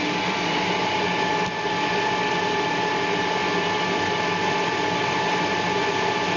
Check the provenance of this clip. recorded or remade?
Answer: recorded